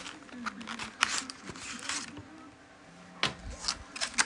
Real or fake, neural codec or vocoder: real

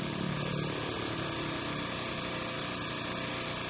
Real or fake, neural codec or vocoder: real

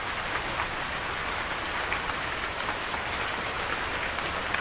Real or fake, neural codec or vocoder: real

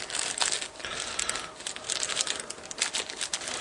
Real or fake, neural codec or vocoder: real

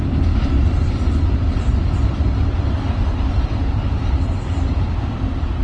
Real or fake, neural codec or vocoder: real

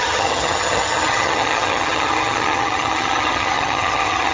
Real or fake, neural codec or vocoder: fake, vocoder, HiFi-GAN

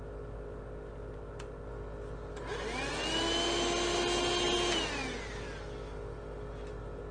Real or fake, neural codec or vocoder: real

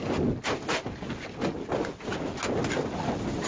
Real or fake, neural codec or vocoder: real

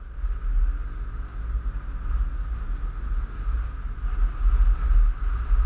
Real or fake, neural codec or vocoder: real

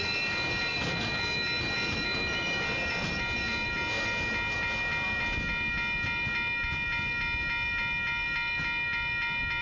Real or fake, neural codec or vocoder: real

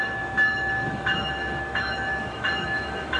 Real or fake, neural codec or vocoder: fake, autoencoder, DAC-VAE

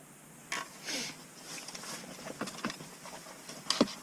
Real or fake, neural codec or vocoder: real